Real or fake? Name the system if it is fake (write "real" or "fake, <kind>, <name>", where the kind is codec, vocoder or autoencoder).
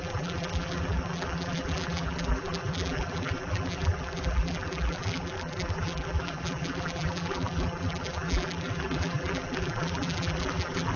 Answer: fake, vocoder, BigVGAN v2